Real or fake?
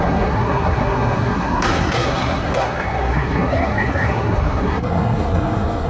fake